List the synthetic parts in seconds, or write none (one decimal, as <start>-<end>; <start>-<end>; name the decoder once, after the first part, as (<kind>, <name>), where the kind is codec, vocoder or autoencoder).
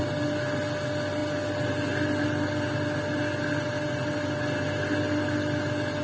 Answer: none